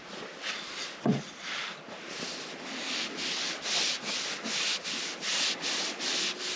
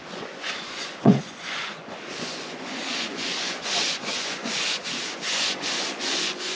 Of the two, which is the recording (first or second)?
first